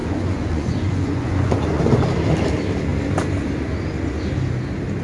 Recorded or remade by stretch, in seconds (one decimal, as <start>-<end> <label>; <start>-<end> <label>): 0.0-1.8 remade; 1.8-5.0 recorded